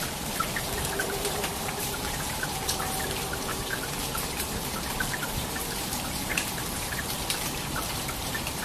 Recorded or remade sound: remade